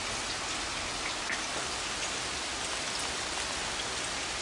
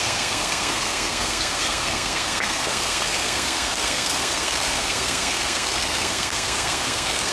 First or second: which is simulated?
second